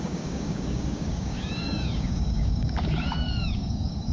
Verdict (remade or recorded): remade